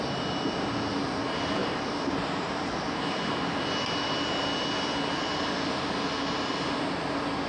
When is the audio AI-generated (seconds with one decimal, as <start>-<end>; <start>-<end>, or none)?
1.6-3.0